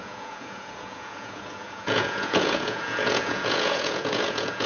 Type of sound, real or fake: fake